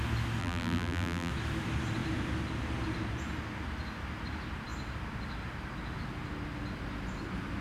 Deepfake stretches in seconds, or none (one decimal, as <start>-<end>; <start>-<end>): 0.4-1.3

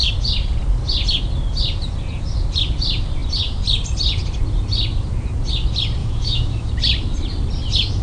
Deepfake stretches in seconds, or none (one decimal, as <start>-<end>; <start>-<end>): 6.0-6.7